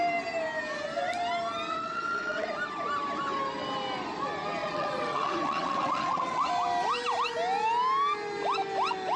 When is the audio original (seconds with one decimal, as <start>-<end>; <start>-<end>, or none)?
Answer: 0.0-1.7; 2.5-4.6; 6.5-9.2